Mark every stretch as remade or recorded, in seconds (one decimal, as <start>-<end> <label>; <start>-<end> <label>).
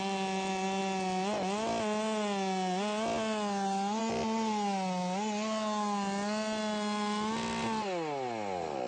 0.0-8.9 recorded